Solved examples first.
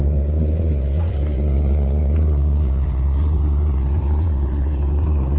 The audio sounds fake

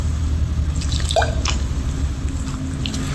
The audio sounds real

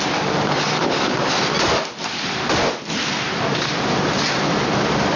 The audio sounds real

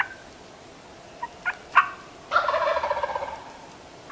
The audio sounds real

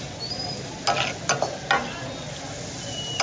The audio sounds real